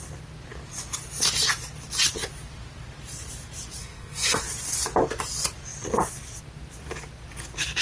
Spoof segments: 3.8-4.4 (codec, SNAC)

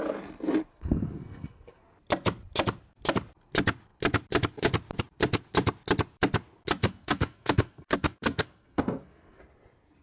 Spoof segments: 0.7-1.8 (codec, SNAC); 6.8-9.4

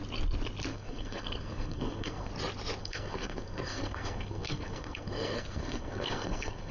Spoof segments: 0.7-2.3 (codec, SNAC); 2.8-6.7